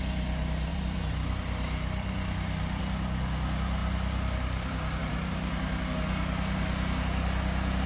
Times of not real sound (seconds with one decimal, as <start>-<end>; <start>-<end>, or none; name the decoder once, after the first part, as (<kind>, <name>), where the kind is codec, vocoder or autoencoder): 0.7-2.8 (vocoder, BigVGAN v2); 3.8-5.9

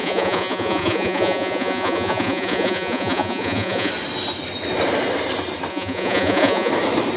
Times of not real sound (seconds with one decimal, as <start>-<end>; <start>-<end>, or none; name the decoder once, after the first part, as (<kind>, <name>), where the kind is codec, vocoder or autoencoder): 0.0-3.9 (vocoder, Vocos); 5.7-6.7

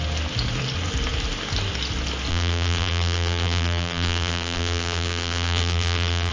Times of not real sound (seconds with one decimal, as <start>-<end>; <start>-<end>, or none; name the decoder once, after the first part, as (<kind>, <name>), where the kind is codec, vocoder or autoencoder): 2.3-6.3 (vocoder, BigVGAN v2)